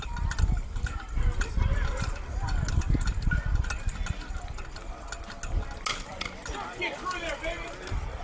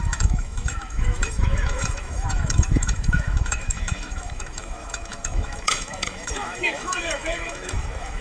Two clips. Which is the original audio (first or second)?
first